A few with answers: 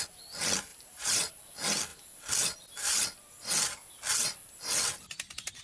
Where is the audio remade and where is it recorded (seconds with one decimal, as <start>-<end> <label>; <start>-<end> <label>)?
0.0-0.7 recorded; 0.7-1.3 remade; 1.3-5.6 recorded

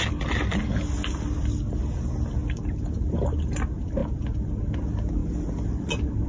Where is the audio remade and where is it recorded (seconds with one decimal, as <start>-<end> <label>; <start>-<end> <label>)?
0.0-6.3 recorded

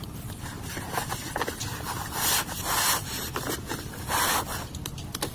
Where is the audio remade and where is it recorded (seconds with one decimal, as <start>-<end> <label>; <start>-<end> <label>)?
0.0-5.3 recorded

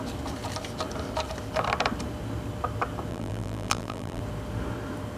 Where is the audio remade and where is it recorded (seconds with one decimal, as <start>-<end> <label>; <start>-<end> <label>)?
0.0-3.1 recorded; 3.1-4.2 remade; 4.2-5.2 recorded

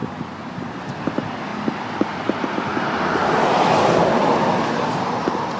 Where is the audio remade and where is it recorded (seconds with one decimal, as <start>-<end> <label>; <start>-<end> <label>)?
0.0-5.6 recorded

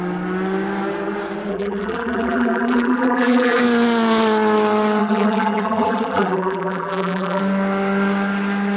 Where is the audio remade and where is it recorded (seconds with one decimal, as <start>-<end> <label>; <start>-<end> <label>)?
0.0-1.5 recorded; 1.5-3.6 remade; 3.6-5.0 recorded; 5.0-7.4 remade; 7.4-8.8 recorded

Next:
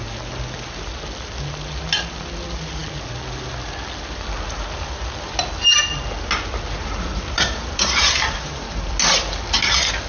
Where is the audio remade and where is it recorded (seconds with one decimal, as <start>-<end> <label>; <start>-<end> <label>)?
0.0-6.8 recorded; 6.8-8.9 remade; 8.9-10.1 recorded

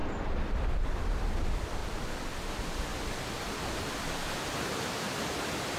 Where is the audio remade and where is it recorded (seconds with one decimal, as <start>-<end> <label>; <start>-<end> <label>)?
0.0-1.1 remade; 1.1-1.8 recorded; 1.8-3.6 remade; 3.6-4.7 recorded; 4.7-5.3 remade; 5.3-5.8 recorded